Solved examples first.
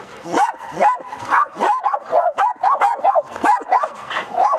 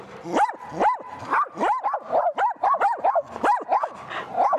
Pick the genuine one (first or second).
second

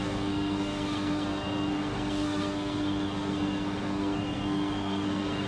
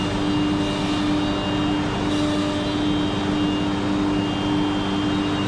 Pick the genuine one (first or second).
second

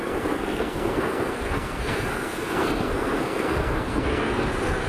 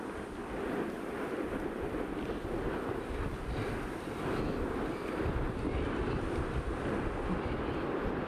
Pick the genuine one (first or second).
second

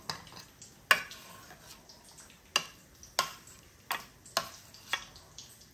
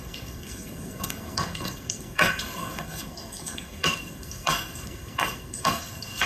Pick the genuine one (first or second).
first